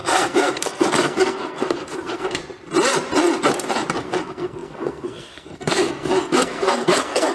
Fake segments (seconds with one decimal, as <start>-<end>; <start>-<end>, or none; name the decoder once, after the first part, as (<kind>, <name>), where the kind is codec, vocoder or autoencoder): 0.0-2.4 (codec, SNAC); 4.0-7.3